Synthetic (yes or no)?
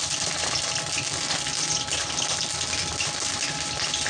no